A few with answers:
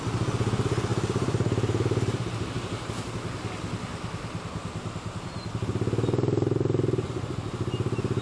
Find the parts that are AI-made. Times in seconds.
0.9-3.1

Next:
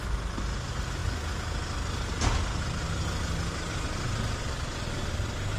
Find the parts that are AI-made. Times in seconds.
none

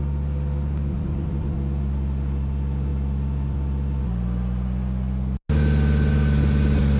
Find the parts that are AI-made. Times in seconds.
none

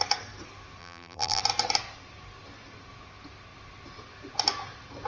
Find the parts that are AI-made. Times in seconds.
0.8-1.4

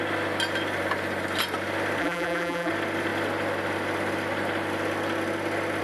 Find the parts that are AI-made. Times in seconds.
2.0-2.7

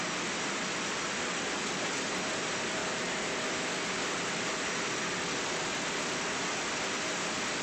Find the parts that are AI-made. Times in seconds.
none

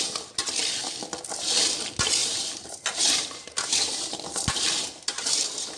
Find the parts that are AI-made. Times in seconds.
2.2-5.8

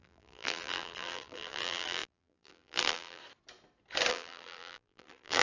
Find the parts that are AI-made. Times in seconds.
0.0-3.2; 4.1-5.4